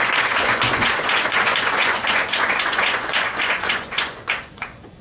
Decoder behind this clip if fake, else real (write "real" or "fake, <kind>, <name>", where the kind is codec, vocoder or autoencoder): fake, vocoder, Vocos